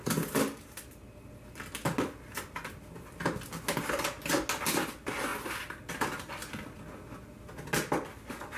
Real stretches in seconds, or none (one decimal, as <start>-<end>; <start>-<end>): 0.0-8.6